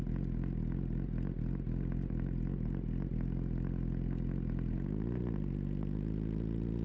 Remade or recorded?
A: recorded